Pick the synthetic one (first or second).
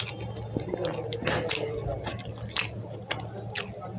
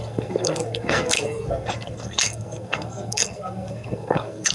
second